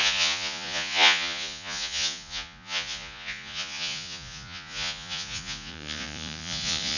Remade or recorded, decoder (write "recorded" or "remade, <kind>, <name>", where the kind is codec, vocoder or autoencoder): remade, vocoder, Vocos